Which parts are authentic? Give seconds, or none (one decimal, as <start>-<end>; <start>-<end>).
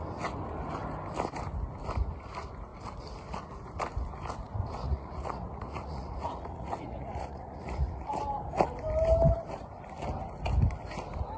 0.0-4.8; 8.2-11.4